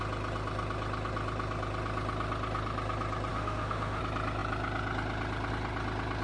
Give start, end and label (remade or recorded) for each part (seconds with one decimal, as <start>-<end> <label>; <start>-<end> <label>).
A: 0.0-3.3 recorded; 3.3-4.0 remade; 4.0-6.2 recorded